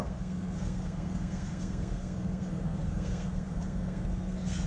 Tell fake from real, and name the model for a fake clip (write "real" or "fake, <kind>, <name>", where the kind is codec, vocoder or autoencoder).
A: fake, codec, SNAC